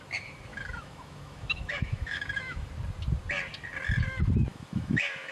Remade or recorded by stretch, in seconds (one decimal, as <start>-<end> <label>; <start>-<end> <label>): 0.0-0.5 recorded; 0.5-2.7 remade; 2.7-4.5 recorded; 4.5-5.3 remade